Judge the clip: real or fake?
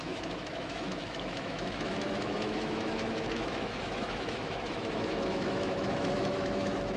fake